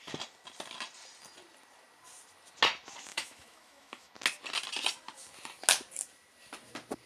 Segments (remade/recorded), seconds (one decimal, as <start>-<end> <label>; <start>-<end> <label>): 0.0-3.1 recorded; 3.1-4.1 remade; 4.1-7.1 recorded